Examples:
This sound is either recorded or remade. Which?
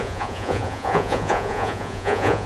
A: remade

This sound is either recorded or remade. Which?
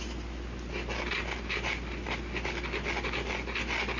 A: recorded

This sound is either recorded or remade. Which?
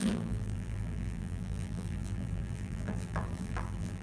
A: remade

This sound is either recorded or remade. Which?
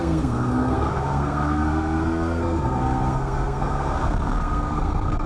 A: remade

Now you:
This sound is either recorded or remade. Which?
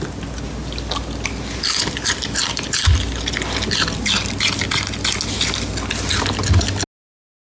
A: recorded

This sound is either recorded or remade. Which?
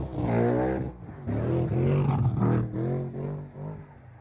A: recorded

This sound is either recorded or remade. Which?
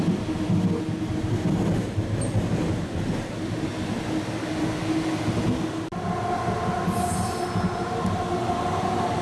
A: recorded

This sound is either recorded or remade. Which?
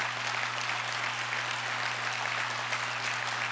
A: recorded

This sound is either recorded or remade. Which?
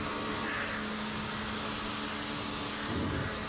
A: recorded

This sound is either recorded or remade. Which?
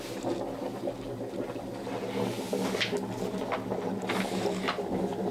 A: recorded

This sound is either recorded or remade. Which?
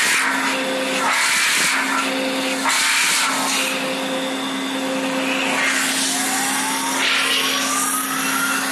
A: recorded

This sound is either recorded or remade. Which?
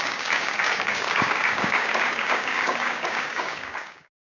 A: remade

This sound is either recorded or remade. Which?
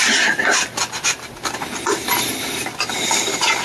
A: recorded